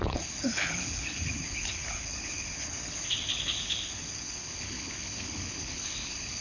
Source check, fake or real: fake